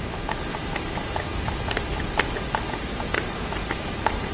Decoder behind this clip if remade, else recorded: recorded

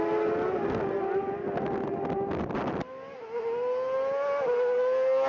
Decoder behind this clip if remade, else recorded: recorded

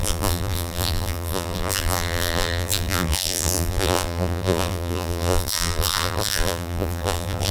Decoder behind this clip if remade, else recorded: remade, vocoder, BigVGAN v2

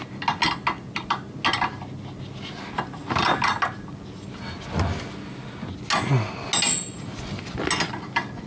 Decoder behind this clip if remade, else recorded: recorded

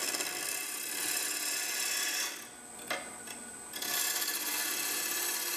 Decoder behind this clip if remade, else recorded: recorded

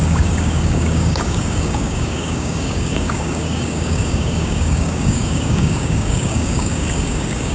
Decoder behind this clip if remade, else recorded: remade, codec, DAC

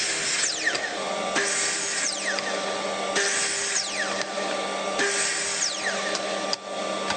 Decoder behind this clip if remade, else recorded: recorded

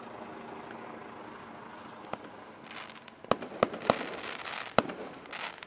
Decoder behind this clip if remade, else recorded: recorded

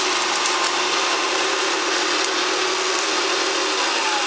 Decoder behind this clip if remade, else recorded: recorded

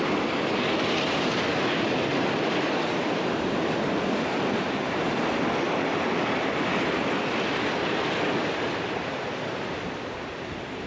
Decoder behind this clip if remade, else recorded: recorded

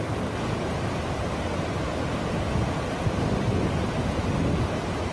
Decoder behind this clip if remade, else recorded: recorded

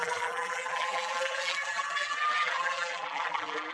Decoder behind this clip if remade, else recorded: remade, vocoder, BigVGAN v2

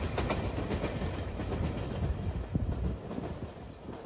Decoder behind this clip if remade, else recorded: recorded